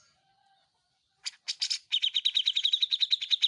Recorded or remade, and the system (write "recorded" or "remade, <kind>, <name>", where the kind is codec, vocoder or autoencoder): recorded